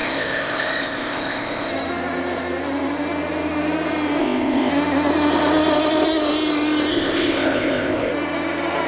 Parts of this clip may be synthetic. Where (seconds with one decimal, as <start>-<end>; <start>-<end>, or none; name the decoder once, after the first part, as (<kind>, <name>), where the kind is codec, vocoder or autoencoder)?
0.0-1.7 (codec, ZipCodec); 4.2-4.7; 6.9-8.1